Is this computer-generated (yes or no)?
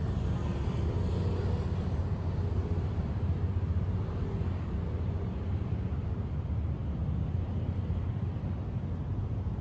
no